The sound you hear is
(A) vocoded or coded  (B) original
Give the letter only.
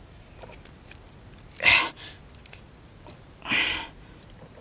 B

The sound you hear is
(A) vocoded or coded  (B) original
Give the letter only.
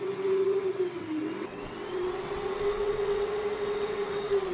A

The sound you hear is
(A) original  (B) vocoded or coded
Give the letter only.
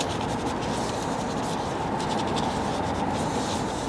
A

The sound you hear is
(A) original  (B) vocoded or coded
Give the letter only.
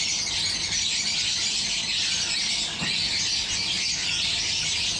A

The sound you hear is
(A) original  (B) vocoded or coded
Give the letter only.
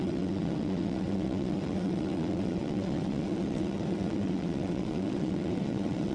B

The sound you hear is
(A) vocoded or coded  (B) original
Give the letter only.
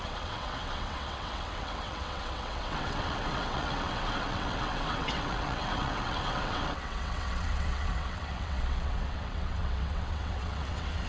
A